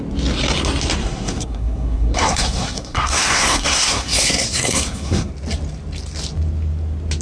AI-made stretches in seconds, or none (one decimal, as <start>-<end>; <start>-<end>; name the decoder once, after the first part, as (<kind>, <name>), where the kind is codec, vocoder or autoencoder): 1.0-5.3 (codec, SNAC)